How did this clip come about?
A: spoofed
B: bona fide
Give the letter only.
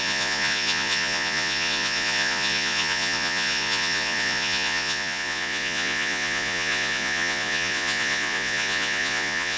A